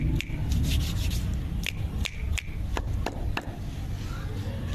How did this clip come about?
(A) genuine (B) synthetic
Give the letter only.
A